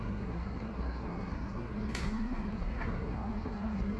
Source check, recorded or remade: remade